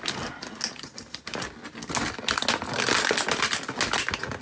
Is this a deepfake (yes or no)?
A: no